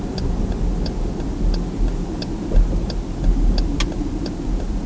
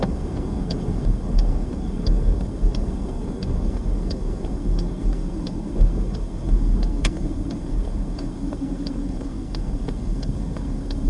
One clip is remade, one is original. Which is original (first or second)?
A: first